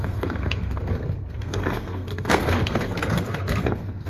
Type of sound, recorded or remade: remade